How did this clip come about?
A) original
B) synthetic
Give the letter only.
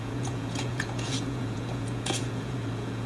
B